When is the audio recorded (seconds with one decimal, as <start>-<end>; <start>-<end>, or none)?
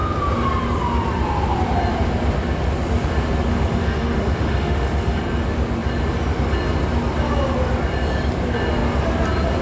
0.0-3.5; 5.2-9.6